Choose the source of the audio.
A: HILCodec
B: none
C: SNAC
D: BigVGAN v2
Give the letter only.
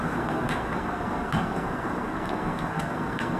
C